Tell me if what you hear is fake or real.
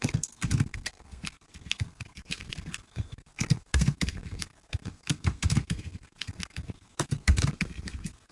fake